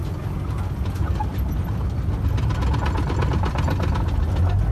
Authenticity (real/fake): real